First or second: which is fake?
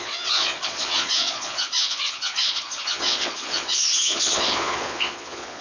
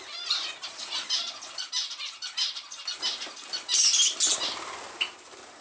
first